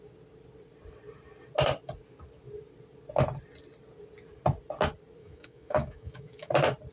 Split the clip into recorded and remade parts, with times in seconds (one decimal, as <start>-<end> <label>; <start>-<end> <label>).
0.0-5.2 recorded; 5.2-6.5 remade; 6.5-6.9 recorded